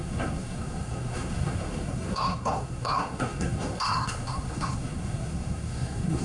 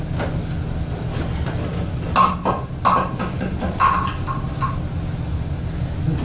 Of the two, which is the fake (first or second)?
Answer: first